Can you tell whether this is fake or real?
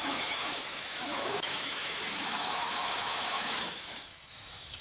fake